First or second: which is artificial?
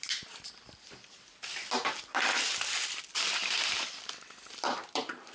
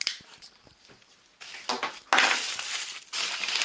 first